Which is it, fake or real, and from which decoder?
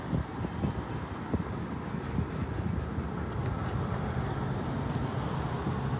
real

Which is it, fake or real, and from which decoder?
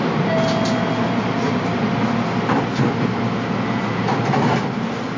real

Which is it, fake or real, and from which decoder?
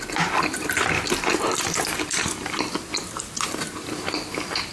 real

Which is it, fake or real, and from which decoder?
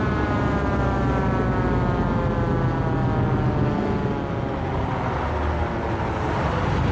real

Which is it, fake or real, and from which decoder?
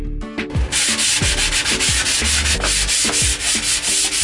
real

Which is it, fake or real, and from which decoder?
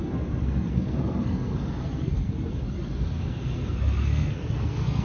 fake, codec, SNAC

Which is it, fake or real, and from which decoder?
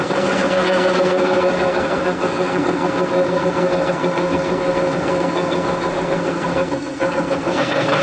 fake, codec, SNAC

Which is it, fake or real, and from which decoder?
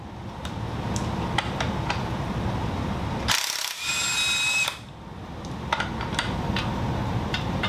real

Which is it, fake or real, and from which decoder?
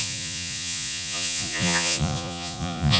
fake, vocoder, Vocos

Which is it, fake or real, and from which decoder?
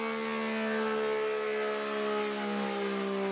real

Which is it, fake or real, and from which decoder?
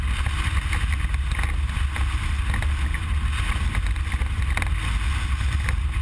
real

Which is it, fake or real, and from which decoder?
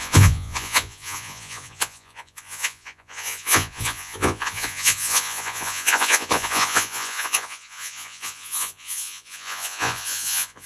fake, vocoder, Vocos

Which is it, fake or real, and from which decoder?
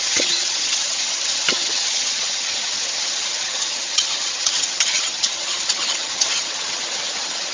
fake, vocoder, HiFi-GAN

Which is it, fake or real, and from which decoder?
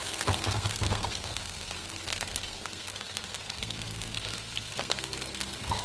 fake, codec, SNAC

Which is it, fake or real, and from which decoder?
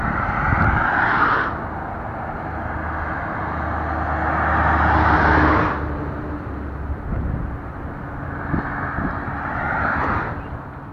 real